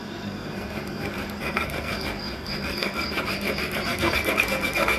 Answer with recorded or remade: remade